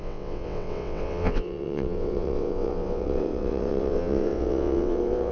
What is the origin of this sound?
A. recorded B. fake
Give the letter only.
B